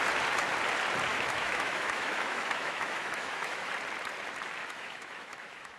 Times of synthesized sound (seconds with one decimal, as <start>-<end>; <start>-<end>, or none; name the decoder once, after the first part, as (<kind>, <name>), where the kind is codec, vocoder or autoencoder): 1.1-3.7 (autoencoder, DAC-VAE); 4.6-5.8